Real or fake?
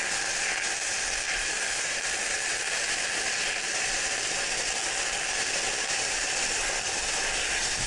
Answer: real